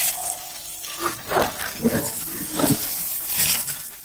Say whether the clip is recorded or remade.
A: remade